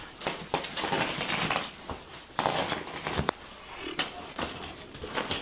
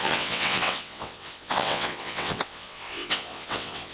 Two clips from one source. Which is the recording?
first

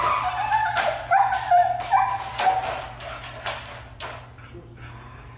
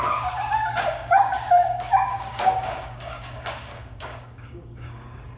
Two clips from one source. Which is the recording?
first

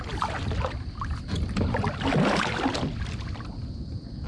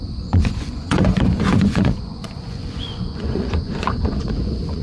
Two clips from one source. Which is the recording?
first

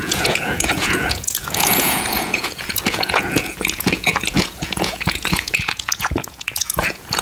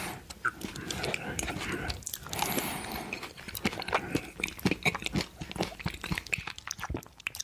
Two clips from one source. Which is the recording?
second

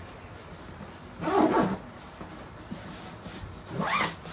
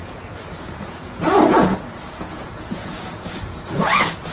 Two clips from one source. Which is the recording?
first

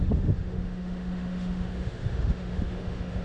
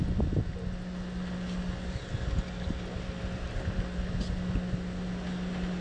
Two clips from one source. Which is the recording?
second